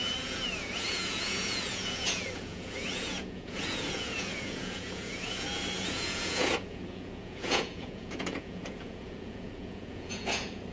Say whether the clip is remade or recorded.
remade